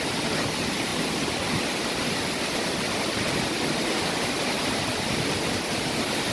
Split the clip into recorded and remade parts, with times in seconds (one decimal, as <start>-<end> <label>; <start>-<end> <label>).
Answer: 0.0-6.3 recorded